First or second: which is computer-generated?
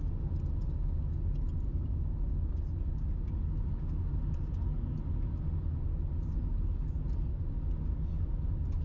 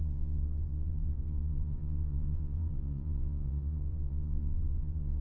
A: second